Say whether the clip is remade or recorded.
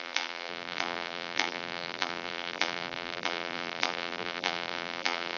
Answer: remade